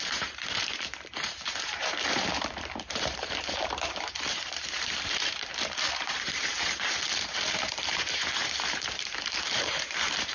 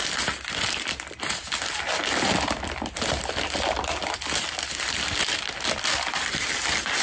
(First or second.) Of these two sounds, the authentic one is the second